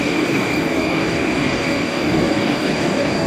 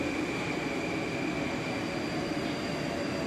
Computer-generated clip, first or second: first